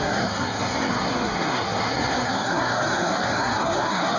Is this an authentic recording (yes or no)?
no